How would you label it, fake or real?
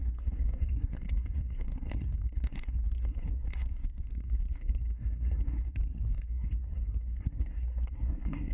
fake